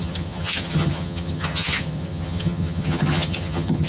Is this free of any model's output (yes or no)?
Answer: no